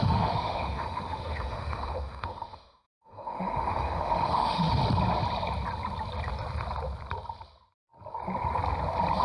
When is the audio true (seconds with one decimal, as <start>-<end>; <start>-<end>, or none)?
4.8-9.2